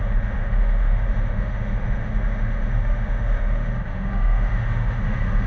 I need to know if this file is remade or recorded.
remade